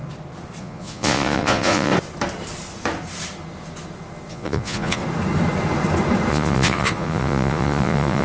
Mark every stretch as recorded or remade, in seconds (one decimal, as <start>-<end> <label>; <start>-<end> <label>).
0.0-0.6 recorded; 0.6-1.9 remade; 1.9-4.3 recorded; 4.3-5.0 remade; 5.0-6.3 recorded; 6.3-8.2 remade